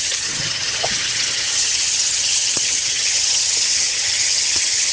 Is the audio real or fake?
fake